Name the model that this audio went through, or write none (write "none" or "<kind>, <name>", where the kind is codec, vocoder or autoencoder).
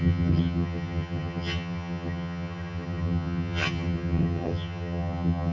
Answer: vocoder, HiFi-GAN